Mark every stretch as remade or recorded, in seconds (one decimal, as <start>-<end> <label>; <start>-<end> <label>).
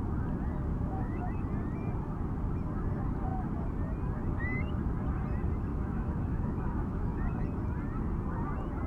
0.0-0.7 recorded; 0.7-1.2 remade; 1.2-5.7 recorded; 5.7-7.4 remade; 7.4-8.9 recorded